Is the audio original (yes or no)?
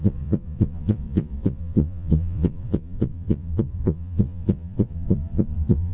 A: no